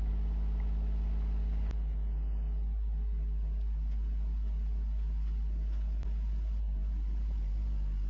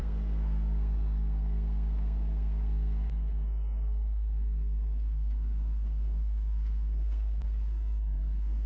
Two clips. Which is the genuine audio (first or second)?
first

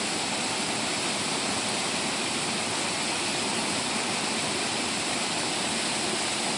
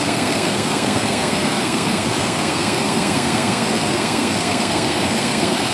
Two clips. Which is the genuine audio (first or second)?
first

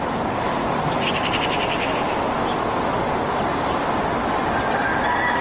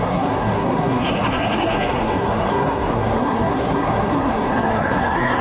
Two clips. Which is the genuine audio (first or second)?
first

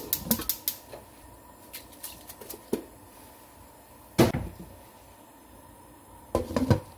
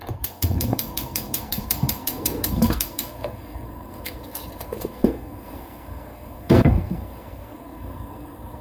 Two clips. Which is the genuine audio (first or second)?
first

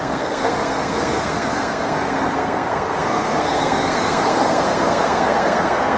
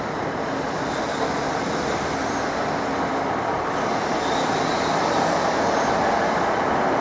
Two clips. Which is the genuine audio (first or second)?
second